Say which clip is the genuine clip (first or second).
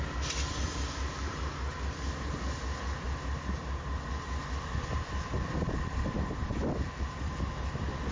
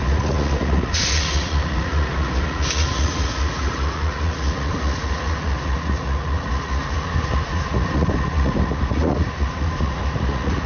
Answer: first